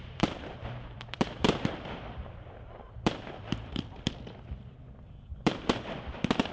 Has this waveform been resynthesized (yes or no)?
yes